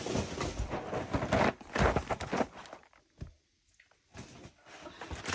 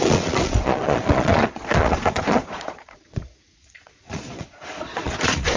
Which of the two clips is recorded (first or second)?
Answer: first